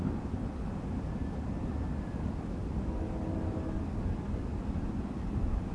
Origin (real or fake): real